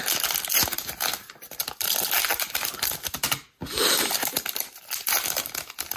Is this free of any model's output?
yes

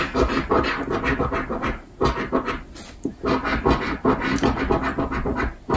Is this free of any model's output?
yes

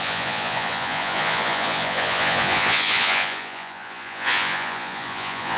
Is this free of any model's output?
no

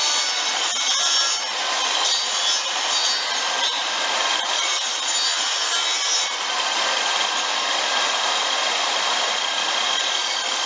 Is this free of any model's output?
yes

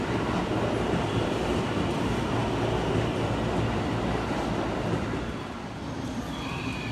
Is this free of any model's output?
yes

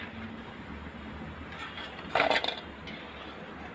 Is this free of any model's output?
yes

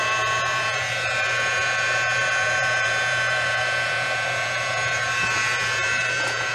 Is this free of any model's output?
no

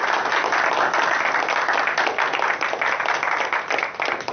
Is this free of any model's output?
yes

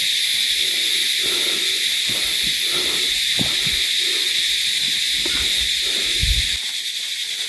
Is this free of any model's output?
yes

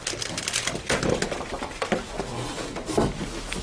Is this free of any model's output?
yes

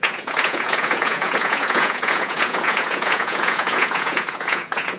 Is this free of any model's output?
no